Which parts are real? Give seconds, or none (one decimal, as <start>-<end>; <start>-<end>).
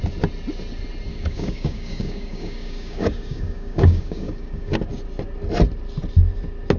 0.0-1.1; 4.8-6.8